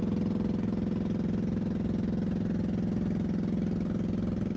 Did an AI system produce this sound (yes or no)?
no